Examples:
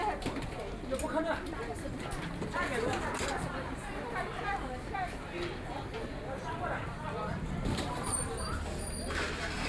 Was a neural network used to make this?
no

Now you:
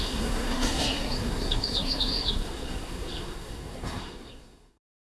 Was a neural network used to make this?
yes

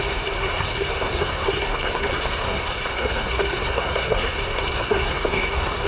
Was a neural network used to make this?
yes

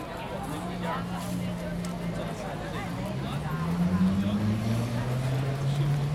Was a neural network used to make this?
no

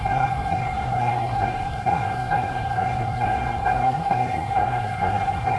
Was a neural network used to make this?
yes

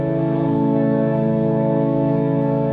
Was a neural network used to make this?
yes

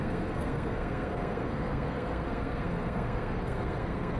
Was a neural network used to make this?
yes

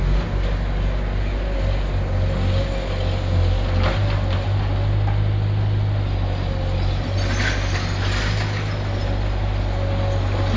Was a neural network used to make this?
no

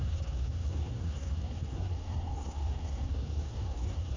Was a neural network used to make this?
yes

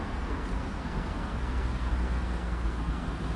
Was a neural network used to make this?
yes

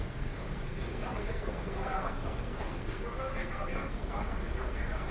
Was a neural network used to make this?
yes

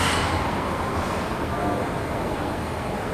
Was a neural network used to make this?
yes